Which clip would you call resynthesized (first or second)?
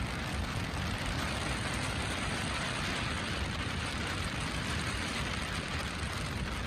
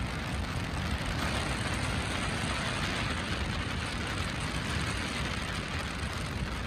first